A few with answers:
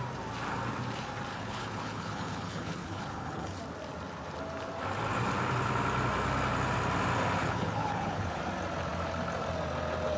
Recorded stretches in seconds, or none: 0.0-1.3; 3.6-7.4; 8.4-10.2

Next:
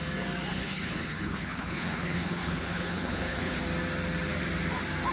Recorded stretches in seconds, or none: 0.0-0.5; 3.6-5.1

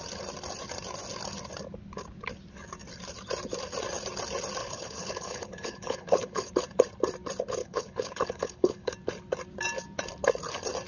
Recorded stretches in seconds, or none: 0.0-4.6; 6.5-7.6; 8.9-10.9

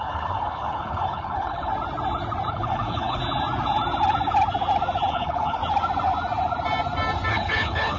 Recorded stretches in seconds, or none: 1.7-2.5; 3.2-5.1; 5.6-7.3

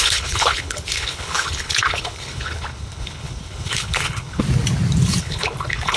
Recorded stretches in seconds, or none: 4.4-5.2